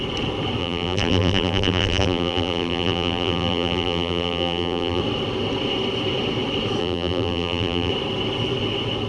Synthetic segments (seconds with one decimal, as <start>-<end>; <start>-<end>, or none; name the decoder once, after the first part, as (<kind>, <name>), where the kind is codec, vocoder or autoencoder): 0.6-5.0 (vocoder, BigVGAN v2); 6.8-7.9